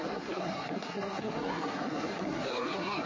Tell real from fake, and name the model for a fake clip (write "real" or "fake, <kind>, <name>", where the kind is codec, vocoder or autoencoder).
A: fake, codec, SNAC